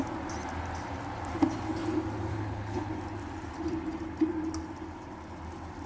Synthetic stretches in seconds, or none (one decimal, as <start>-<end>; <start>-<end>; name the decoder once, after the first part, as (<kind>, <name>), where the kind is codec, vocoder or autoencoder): 2.3-2.9 (codec, HILCodec)